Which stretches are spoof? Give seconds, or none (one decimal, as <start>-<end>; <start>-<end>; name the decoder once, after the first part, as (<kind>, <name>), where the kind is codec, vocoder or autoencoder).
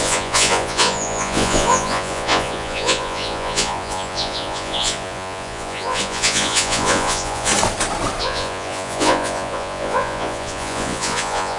0.0-7.5 (vocoder, Vocos); 8.2-11.6